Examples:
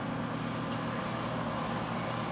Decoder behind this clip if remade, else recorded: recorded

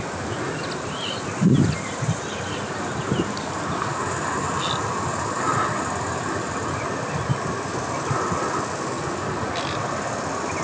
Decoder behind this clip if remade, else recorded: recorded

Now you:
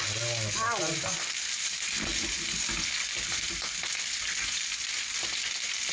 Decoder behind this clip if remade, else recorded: recorded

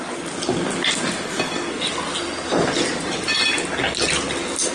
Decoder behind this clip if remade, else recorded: recorded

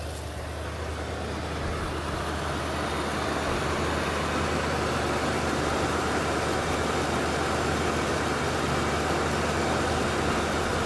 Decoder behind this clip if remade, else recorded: recorded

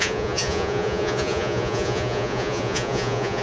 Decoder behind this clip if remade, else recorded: remade, vocoder, Vocos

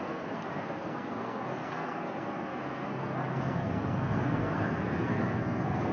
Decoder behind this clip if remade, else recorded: remade, codec, SNAC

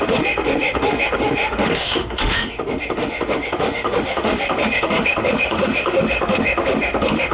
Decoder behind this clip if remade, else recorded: remade, autoencoder, DAC-VAE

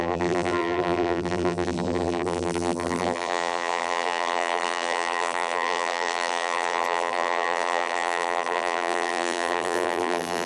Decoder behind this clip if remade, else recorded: remade, vocoder, BigVGAN v2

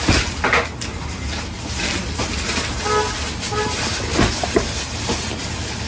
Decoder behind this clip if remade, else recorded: recorded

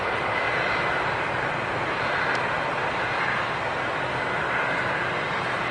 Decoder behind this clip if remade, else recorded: recorded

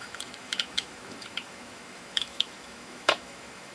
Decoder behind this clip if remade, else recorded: remade, autoencoder, DAC-VAE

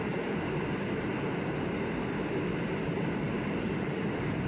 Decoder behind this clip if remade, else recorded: recorded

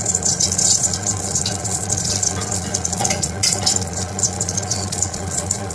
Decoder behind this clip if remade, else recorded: remade, vocoder, Vocos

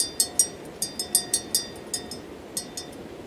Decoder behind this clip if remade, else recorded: recorded